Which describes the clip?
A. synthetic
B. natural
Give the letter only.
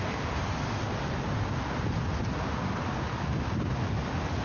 B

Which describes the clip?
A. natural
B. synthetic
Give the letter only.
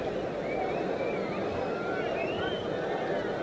A